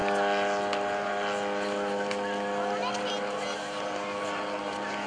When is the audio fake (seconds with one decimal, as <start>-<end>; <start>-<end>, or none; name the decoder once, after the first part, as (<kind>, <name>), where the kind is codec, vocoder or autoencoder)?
none